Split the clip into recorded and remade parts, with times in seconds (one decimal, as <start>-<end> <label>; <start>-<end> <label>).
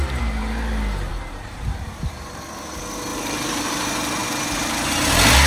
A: 0.0-1.1 recorded; 1.1-2.4 remade; 2.4-3.1 recorded; 3.1-4.2 remade; 4.2-5.5 recorded